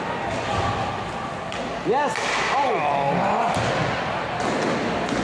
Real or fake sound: real